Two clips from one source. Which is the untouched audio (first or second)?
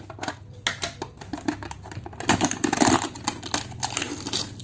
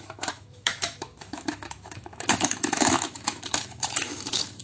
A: first